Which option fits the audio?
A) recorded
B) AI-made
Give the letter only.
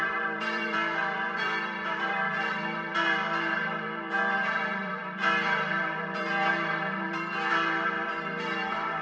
B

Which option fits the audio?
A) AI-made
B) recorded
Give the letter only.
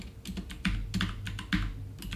B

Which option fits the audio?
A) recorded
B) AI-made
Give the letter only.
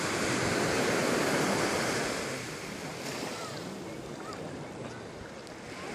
A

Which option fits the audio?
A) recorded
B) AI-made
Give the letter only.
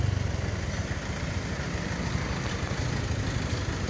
A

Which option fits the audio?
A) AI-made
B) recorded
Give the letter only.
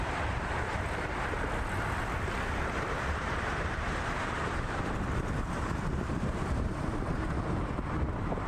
A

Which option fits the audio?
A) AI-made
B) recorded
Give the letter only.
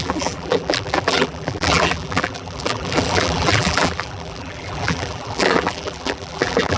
A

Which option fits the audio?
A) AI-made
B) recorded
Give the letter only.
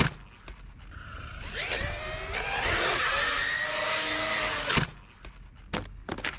B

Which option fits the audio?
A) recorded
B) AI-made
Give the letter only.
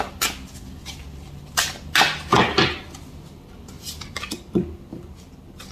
A